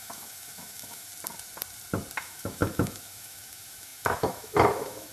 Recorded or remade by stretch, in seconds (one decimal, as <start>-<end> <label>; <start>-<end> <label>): 0.0-1.1 remade; 1.1-2.2 recorded; 2.2-5.1 remade